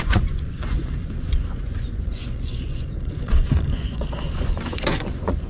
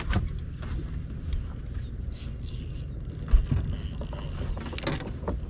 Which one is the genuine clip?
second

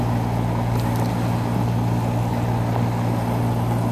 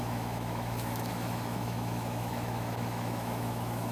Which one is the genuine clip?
first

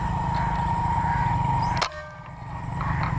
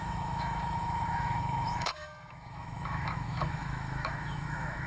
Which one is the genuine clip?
first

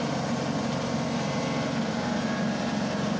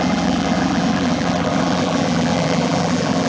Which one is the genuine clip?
first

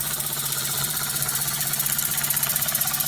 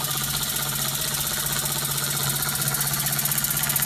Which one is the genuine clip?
second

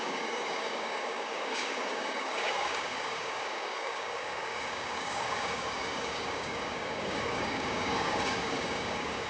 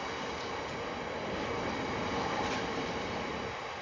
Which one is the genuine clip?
second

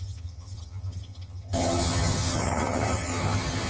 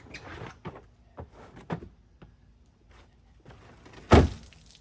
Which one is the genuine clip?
second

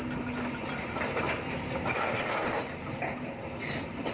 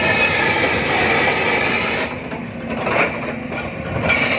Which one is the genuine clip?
first